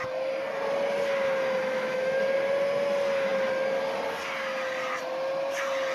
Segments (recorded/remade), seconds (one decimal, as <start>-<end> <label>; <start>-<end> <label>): 0.0-1.6 recorded; 1.6-2.2 remade; 2.2-5.9 recorded